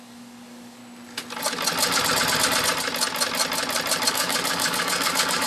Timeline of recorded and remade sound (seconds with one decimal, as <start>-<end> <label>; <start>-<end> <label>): 0.0-0.8 remade; 0.8-4.1 recorded; 4.1-5.5 remade